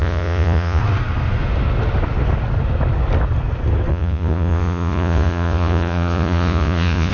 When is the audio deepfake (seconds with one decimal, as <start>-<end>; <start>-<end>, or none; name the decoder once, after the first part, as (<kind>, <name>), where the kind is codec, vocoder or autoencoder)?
0.0-0.8 (vocoder, Vocos); 3.9-7.1